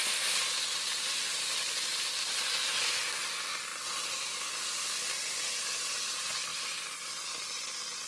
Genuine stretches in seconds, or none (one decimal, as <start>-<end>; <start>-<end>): 3.0-8.1